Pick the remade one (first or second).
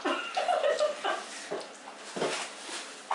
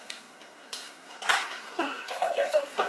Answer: second